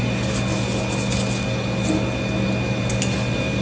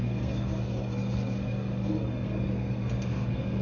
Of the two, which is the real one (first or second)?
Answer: first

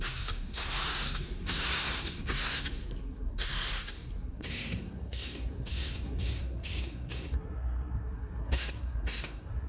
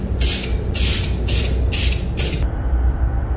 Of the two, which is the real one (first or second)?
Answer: second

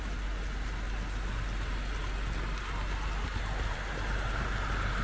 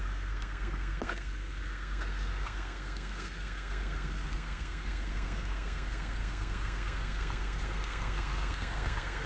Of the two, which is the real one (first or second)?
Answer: first